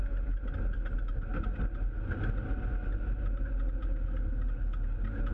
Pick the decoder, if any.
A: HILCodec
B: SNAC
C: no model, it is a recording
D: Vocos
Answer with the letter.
C